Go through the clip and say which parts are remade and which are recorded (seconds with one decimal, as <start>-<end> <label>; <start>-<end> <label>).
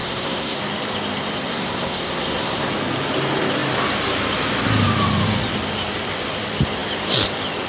0.0-0.6 remade; 0.6-1.5 recorded; 1.5-2.7 remade; 2.7-7.7 recorded